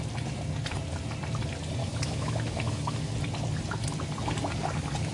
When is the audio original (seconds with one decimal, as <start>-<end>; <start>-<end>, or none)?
0.0-1.8; 3.1-5.1